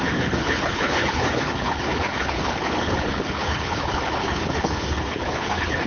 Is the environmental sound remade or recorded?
remade